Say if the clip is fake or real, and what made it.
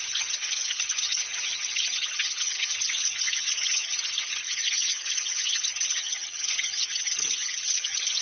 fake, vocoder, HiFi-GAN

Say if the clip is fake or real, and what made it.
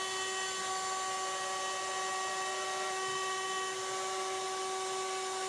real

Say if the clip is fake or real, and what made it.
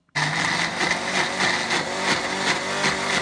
real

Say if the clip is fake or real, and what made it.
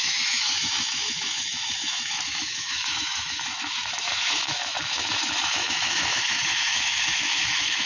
fake, autoencoder, DAC-VAE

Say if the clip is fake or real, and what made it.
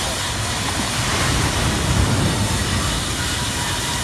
real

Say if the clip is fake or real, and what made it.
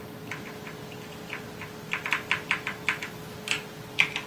real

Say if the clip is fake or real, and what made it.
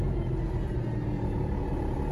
real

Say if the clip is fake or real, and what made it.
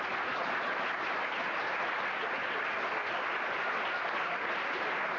real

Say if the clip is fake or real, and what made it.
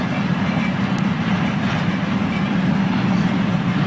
real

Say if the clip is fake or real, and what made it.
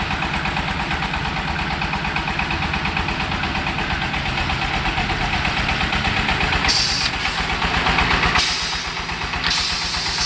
real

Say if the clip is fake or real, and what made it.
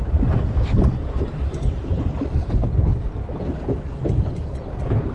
real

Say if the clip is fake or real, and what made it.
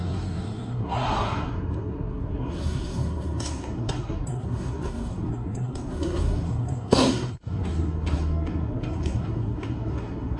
fake, codec, SNAC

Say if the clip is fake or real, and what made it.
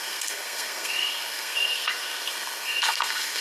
fake, codec, SNAC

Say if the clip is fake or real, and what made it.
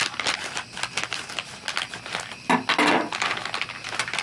real